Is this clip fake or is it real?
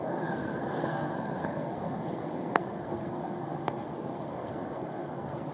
fake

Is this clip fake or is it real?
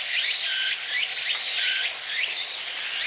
real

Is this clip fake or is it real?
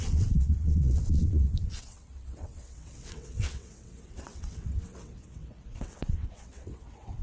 fake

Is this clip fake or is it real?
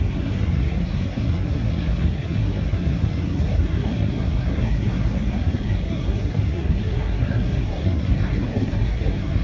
fake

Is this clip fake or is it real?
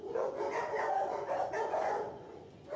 fake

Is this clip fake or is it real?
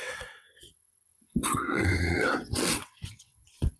fake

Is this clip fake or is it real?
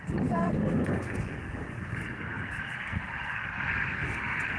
fake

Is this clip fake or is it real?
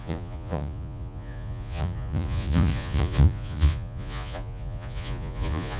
fake